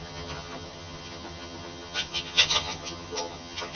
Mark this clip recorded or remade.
remade